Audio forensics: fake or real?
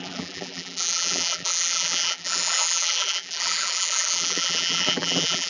fake